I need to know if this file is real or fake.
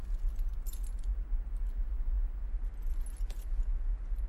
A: real